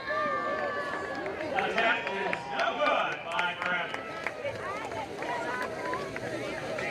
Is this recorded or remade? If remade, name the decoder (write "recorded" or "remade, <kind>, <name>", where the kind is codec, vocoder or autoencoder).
recorded